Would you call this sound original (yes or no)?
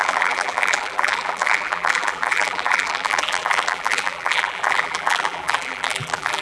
no